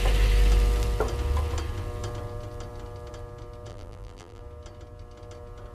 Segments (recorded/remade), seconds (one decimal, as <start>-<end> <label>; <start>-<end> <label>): 0.0-3.7 recorded; 3.7-4.4 remade; 4.4-5.7 recorded